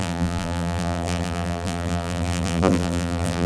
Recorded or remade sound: remade